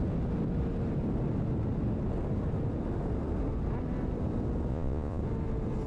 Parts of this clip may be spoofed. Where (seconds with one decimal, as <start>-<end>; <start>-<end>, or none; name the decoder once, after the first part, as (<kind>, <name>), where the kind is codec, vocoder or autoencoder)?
4.7-5.2 (vocoder, Vocos)